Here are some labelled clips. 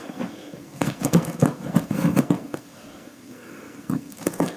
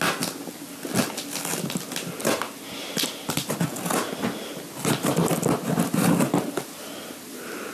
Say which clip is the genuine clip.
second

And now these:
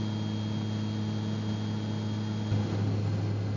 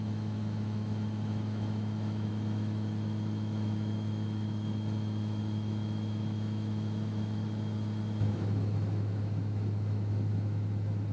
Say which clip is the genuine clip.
first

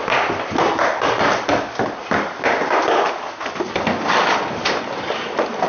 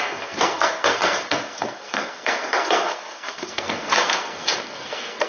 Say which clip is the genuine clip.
first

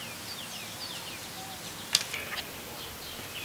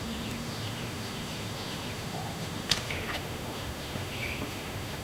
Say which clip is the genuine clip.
first